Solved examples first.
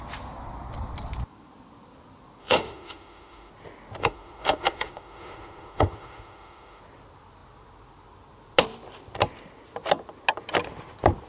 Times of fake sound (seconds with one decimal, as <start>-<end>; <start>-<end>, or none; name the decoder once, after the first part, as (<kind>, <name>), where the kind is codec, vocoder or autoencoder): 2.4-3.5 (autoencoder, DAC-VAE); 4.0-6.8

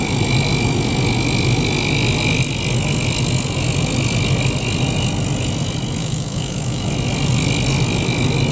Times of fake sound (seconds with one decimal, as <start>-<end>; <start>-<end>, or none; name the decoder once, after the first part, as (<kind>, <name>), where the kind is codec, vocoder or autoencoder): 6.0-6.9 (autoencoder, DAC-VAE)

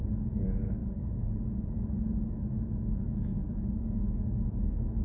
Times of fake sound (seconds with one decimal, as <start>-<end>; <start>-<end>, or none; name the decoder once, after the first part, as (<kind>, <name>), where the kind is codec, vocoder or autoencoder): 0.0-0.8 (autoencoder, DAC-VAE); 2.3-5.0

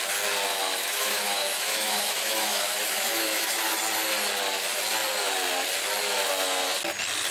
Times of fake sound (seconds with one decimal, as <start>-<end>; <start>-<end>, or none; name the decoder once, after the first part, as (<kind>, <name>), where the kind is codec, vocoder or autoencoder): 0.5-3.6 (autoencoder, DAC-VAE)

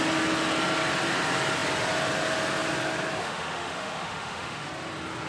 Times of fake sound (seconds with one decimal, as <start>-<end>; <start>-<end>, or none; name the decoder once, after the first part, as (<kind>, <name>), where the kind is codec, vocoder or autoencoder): 3.2-4.7 (autoencoder, DAC-VAE)

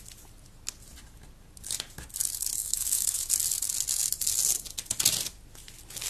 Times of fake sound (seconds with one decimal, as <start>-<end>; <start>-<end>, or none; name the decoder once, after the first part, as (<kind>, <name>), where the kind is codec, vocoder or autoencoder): 2.6-3.3 (autoencoder, DAC-VAE)

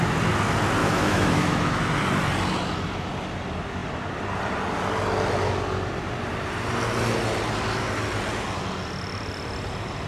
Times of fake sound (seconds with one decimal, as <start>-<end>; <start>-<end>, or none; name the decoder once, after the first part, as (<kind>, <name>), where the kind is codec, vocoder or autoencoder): 0.8-1.8 (autoencoder, DAC-VAE)